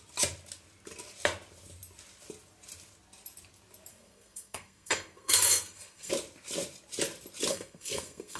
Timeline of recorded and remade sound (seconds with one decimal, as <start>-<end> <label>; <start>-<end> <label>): 0.0-3.9 recorded; 3.9-6.1 remade; 6.1-7.5 recorded; 7.5-8.4 remade